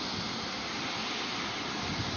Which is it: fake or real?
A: real